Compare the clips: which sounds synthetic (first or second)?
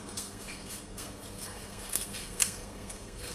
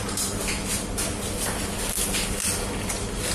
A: first